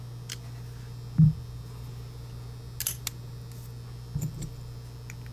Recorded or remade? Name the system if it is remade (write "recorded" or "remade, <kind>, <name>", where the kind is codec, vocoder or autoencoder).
recorded